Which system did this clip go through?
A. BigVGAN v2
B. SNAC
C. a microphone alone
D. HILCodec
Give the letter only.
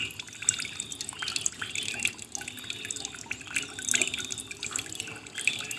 C